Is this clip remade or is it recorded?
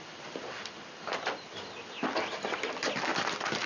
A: recorded